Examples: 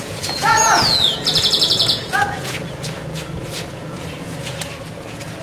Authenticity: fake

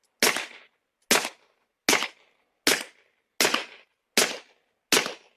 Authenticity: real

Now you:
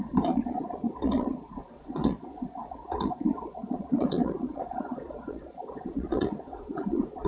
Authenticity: fake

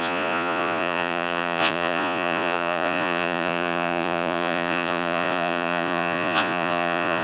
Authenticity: fake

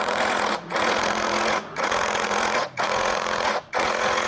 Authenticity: fake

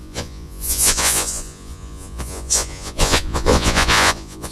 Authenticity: fake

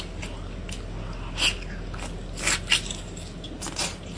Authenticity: real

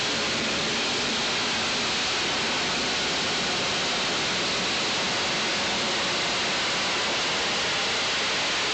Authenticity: real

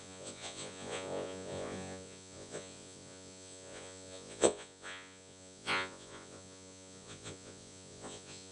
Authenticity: fake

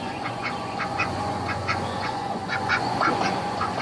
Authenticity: fake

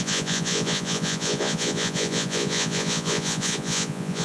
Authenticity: fake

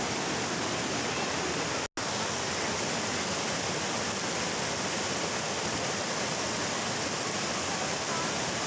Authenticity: real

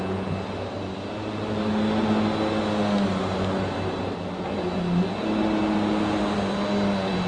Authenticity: real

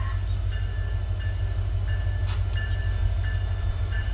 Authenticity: real